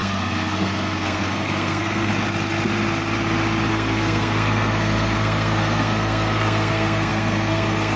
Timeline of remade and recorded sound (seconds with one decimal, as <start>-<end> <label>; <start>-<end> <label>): 0.0-2.1 remade; 2.1-3.7 recorded; 3.7-8.0 remade